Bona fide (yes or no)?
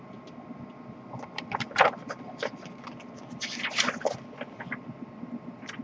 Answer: yes